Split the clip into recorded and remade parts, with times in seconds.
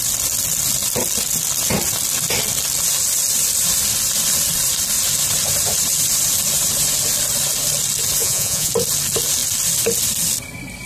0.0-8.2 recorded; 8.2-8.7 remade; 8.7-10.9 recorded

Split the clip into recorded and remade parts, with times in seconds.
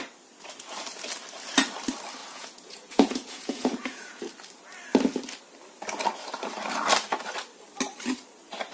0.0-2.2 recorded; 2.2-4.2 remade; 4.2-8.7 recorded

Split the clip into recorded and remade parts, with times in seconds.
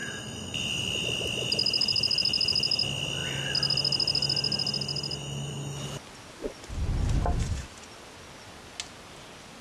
0.0-9.6 recorded